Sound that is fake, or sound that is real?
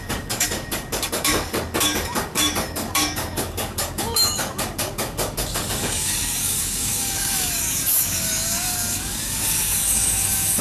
fake